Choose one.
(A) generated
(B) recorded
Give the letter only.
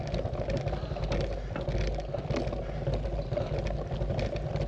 B